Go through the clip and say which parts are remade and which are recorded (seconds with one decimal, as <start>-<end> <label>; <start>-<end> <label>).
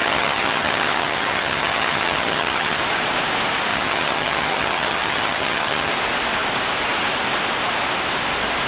0.0-2.8 remade; 2.8-3.7 recorded; 3.7-5.9 remade; 5.9-8.7 recorded